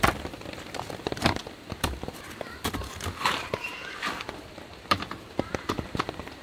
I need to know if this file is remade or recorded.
remade